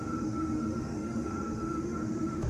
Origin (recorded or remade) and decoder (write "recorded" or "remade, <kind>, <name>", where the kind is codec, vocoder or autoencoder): remade, autoencoder, DAC-VAE